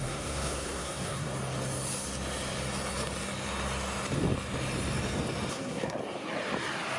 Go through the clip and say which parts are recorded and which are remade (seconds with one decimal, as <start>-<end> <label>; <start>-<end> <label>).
0.0-1.3 remade; 1.3-5.5 recorded; 5.5-6.0 remade; 6.0-7.0 recorded